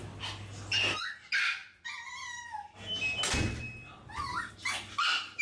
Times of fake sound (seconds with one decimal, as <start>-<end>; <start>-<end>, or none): none